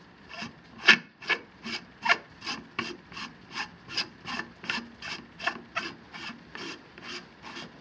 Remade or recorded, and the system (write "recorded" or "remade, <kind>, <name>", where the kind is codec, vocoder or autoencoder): recorded